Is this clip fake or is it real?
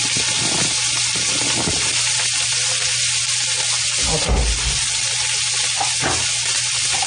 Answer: real